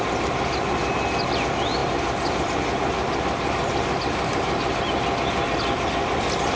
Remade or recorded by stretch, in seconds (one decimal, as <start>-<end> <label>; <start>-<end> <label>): 0.0-6.6 recorded